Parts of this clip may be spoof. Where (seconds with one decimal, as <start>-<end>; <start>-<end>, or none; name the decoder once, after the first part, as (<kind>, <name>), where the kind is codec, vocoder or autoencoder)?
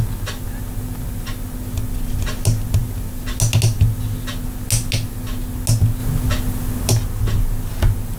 none